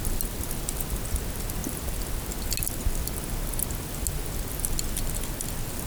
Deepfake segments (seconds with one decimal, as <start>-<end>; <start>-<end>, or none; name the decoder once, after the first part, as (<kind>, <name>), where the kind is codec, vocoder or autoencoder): none